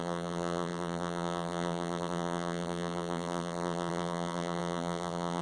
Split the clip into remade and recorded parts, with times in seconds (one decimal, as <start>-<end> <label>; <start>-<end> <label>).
0.0-5.4 remade